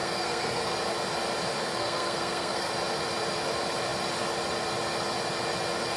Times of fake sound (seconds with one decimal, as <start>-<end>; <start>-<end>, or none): 0.0-0.7; 1.6-2.7

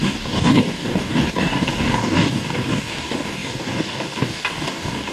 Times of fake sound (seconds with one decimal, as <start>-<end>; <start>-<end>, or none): 0.0-5.1

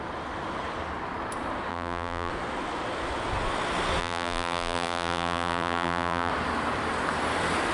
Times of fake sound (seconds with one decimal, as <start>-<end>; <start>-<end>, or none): 1.7-2.3; 4.0-6.3

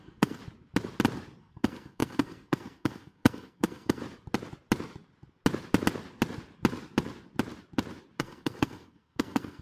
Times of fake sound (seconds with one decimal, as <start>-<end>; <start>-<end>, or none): 0.0-0.4; 1.4-4.0; 8.2-9.6

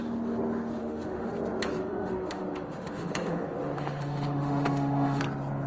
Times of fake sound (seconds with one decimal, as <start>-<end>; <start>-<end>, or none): 0.8-1.3; 1.8-5.2

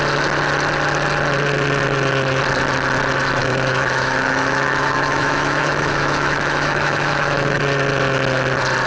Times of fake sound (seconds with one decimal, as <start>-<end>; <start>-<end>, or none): 3.4-7.6

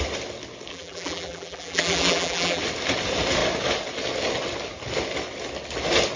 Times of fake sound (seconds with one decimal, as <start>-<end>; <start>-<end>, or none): 0.7-2.6